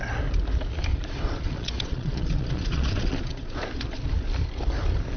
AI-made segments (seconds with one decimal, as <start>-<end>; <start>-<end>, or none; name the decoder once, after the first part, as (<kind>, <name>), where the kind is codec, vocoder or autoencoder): 0.9-3.5 (vocoder, Vocos)